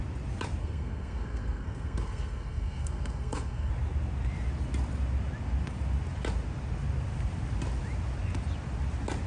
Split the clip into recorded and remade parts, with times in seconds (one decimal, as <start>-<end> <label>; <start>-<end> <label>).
0.0-0.6 recorded; 0.6-3.7 remade; 3.7-9.3 recorded